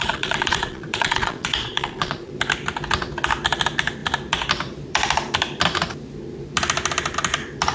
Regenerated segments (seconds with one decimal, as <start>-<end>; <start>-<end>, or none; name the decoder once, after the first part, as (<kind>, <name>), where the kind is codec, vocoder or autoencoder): 0.0-2.3 (vocoder, Vocos)